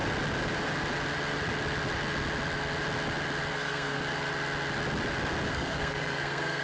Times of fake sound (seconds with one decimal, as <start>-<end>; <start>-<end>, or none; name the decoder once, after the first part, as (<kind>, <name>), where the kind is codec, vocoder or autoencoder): 3.5-4.0 (codec, SNAC); 5.5-6.6